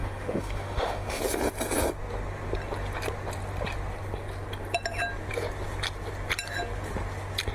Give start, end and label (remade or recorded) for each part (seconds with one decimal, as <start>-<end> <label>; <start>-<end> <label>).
0.0-1.2 remade; 1.2-7.5 recorded